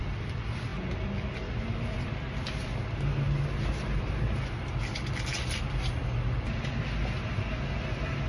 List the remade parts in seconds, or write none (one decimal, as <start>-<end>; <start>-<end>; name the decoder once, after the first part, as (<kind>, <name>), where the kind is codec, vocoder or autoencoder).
none

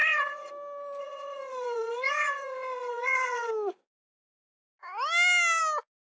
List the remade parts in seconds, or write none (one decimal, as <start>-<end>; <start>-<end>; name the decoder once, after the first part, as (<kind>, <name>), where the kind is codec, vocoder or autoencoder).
0.0-0.5 (vocoder, WaveNeXt); 1.0-3.5